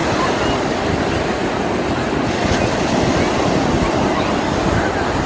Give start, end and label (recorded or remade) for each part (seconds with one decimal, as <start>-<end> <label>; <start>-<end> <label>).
0.0-5.3 recorded